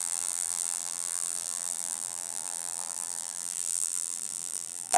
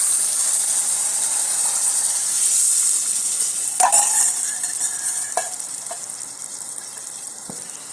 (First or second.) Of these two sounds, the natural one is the second